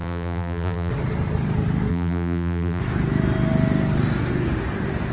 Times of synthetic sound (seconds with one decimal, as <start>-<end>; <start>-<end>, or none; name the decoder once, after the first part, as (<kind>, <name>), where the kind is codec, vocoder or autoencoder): 0.0-0.9 (vocoder, BigVGAN v2); 1.9-2.8